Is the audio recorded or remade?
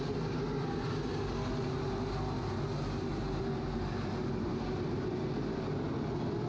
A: recorded